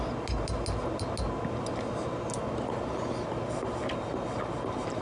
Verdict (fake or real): real